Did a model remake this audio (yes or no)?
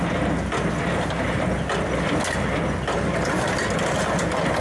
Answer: no